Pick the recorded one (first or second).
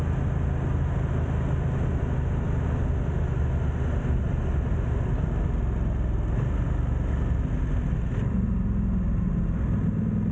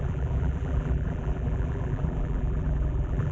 first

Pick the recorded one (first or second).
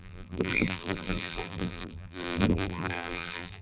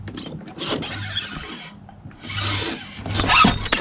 second